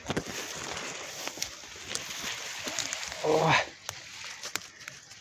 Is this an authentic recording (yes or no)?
yes